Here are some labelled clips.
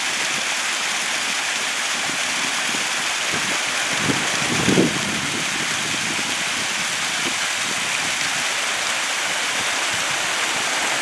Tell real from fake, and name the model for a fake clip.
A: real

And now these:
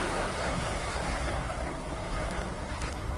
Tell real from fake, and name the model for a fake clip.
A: fake, codec, SNAC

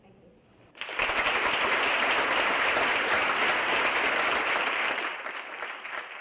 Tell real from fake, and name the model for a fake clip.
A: fake, vocoder, BigVGAN v2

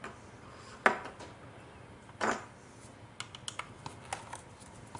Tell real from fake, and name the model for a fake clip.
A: real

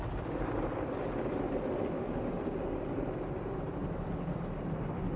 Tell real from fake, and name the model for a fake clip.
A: real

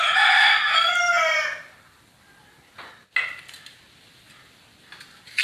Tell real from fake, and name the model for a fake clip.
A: real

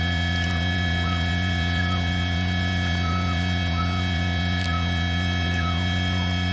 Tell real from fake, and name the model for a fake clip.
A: real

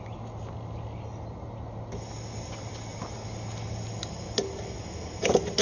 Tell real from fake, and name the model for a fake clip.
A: real